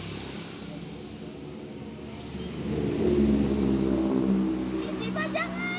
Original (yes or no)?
yes